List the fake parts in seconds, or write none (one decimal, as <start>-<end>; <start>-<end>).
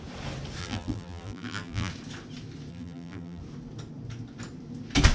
0.6-1.9; 2.7-3.4